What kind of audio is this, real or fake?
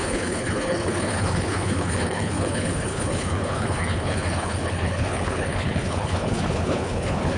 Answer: fake